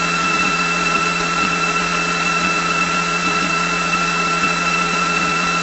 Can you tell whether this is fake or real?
fake